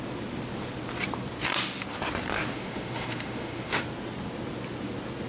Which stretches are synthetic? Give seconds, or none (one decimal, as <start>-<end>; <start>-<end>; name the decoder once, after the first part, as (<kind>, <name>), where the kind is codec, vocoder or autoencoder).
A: 2.5-3.8 (autoencoder, DAC-VAE)

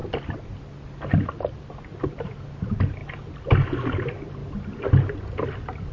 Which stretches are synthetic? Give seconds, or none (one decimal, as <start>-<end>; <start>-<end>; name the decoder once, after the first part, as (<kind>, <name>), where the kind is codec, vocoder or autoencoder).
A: none

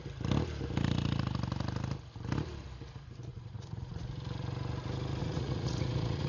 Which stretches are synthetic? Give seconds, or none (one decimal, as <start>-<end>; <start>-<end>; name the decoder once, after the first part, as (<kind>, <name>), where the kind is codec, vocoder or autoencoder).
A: 3.3-4.1 (vocoder, Vocos); 5.2-6.3

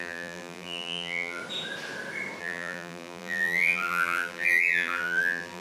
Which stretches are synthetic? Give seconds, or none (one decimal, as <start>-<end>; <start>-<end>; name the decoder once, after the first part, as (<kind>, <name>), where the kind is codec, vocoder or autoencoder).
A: 0.0-1.4 (vocoder, BigVGAN v2); 2.4-5.6

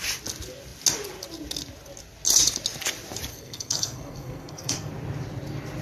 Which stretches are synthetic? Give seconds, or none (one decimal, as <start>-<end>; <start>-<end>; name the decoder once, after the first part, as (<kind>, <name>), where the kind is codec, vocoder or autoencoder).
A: 3.3-4.9 (codec, SNAC)

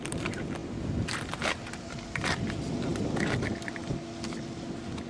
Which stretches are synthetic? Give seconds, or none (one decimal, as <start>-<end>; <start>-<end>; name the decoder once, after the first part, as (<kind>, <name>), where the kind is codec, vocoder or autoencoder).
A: none

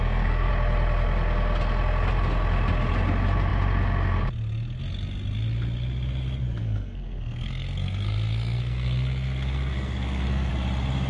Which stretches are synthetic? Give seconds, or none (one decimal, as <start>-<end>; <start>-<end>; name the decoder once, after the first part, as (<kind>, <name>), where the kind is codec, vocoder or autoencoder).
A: 0.0-0.5 (codec, SNAC); 6.6-10.5

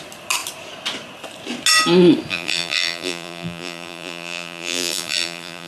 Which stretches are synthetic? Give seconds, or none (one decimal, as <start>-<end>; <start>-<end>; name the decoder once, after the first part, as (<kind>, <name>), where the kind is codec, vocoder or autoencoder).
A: 2.3-5.7 (vocoder, BigVGAN v2)